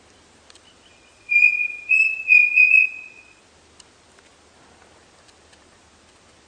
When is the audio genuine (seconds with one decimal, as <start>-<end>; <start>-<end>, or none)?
0.0-0.9; 3.4-6.5